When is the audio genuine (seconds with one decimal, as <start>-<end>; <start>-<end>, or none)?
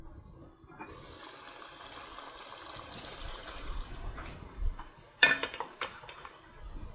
0.0-3.1; 6.5-6.9